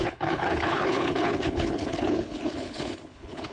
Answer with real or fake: fake